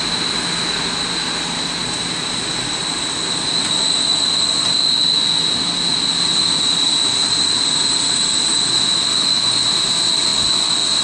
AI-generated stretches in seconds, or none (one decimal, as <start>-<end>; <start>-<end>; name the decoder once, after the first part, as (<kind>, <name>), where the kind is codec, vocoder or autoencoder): none